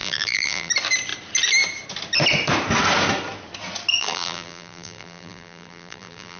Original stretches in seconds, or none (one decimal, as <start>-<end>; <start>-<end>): 0.7-4.0